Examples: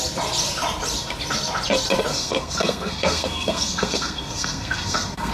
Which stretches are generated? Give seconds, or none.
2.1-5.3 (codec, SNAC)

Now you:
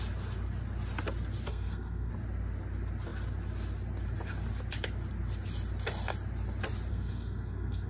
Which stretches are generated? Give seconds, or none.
1.5-2.1 (codec, SNAC); 6.9-7.9

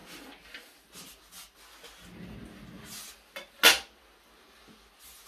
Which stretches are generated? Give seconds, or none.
0.0-0.9 (vocoder, BigVGAN v2)

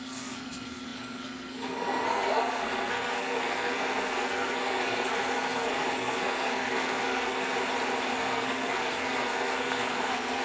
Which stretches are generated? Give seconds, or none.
0.0-7.5 (codec, SNAC); 8.1-10.4

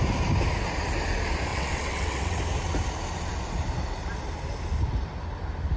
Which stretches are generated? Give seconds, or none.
1.5-2.4 (vocoder, WaveNeXt)

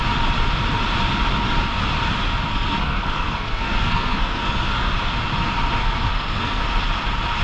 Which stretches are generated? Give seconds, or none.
2.5-4.9 (codec, SNAC); 5.8-6.6